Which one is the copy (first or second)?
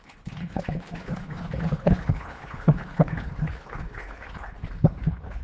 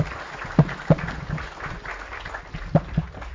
first